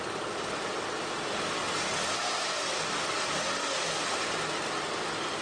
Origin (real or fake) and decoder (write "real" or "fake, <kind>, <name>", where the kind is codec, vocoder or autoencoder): real